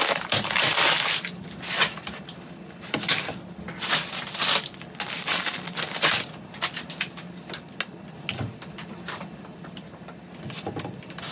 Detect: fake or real real